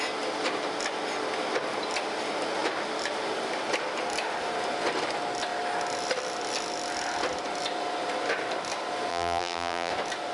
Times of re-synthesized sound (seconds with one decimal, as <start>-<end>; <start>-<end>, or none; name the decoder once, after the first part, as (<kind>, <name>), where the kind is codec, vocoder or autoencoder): 9.1-9.9 (vocoder, BigVGAN v2)